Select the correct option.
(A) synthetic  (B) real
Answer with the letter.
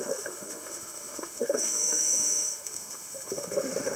A